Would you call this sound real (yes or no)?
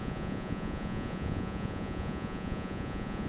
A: no